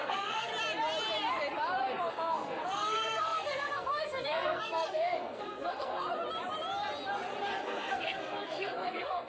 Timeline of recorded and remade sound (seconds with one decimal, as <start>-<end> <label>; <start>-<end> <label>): 0.0-0.5 remade; 0.5-2.1 recorded; 2.1-6.1 remade; 6.1-7.6 recorded; 7.6-9.3 remade